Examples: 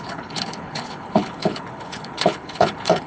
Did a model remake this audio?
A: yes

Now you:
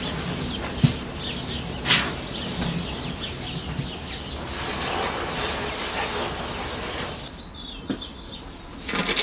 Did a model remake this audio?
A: no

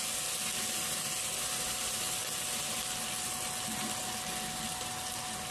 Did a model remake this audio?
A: no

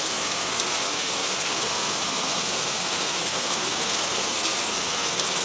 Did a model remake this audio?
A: yes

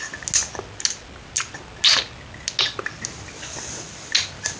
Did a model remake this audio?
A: no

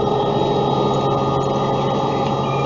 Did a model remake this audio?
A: no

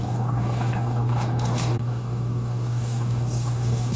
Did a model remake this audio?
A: yes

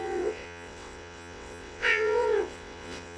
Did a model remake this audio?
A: yes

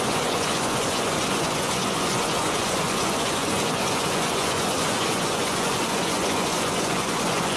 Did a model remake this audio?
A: yes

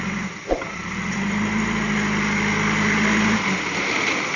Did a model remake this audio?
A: no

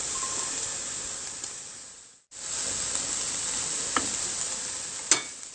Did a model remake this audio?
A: no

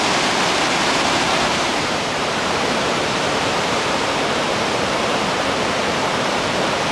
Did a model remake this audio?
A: yes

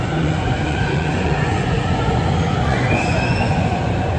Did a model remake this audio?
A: yes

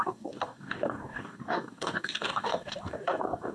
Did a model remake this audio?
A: yes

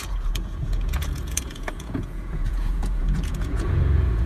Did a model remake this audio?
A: yes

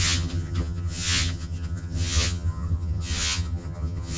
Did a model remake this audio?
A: yes